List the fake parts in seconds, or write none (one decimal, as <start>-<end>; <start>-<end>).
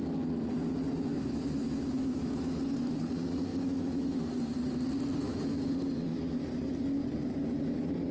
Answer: 1.1-2.4; 3.5-4.2; 5.2-5.7